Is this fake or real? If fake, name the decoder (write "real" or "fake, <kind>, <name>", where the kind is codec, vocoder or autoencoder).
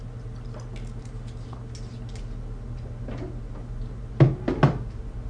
real